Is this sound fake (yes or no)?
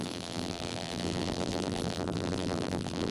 yes